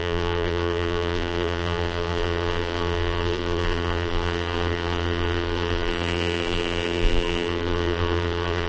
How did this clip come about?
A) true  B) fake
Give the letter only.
B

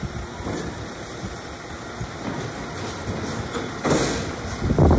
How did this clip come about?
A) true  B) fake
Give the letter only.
A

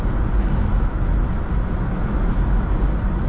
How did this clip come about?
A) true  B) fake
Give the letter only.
A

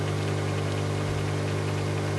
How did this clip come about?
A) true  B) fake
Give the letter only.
A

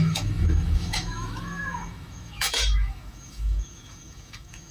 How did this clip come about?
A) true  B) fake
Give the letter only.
B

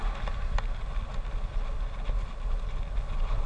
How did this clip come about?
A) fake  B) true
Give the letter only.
B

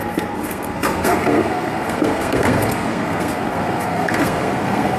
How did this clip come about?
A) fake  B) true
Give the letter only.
A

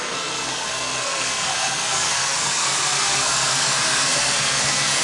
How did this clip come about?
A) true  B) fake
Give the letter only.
B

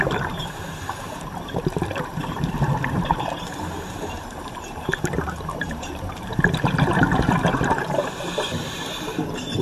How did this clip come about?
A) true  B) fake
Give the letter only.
B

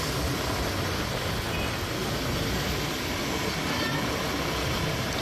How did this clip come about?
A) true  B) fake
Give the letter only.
A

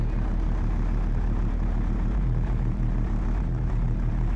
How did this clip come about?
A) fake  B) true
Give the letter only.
A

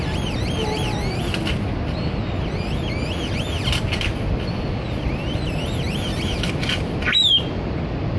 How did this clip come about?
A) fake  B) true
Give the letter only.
B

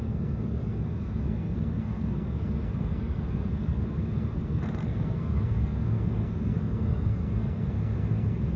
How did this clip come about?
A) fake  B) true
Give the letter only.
A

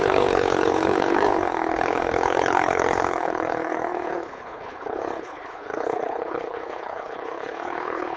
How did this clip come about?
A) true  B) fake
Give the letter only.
B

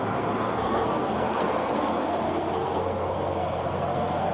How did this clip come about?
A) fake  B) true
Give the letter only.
A